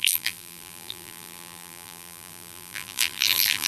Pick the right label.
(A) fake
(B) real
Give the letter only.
A